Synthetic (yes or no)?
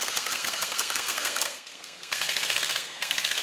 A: yes